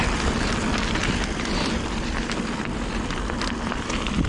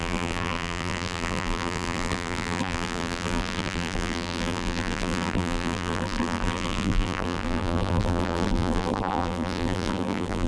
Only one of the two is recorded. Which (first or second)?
first